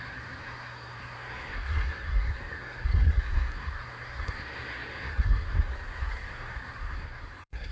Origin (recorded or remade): remade